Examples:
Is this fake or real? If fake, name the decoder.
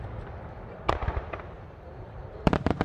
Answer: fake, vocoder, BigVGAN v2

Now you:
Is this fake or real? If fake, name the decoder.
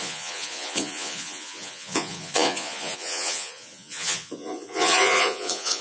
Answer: fake, vocoder, Vocos